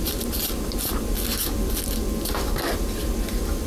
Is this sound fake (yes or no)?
no